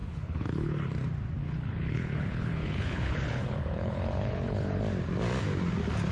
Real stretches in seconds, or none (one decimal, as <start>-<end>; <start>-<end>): 0.9-1.4; 4.8-6.1